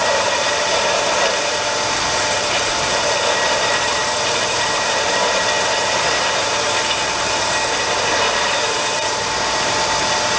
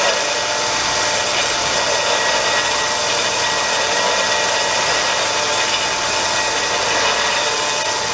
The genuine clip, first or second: second